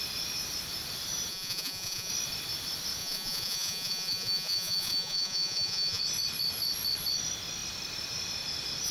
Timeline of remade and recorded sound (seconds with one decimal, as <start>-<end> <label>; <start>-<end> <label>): 0.0-1.3 recorded; 1.3-2.1 remade; 2.1-3.0 recorded; 3.0-6.0 remade; 6.0-8.9 recorded